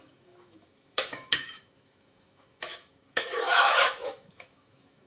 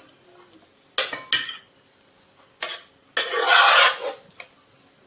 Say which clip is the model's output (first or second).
first